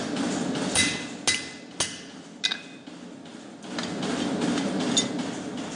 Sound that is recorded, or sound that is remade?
recorded